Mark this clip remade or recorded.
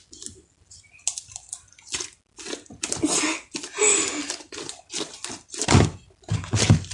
recorded